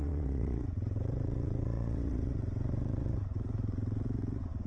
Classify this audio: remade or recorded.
remade